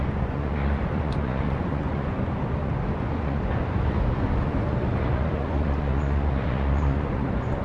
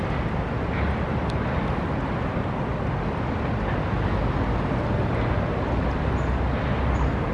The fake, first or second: first